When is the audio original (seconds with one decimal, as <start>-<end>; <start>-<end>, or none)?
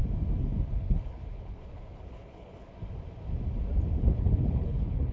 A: 0.0-0.8; 2.7-4.0